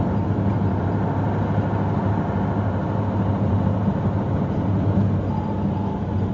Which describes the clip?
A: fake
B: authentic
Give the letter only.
B